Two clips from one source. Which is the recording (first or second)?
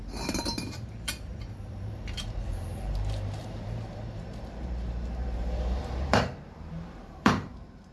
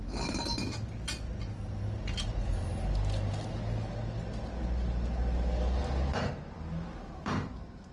second